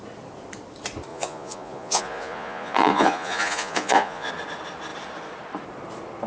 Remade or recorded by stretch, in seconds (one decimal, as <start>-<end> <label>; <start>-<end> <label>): 0.0-1.1 recorded; 1.1-4.3 remade; 4.3-6.3 recorded